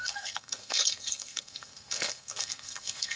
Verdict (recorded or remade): remade